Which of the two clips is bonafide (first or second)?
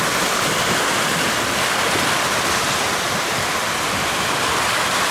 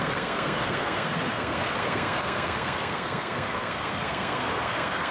first